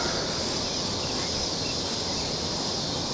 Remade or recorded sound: recorded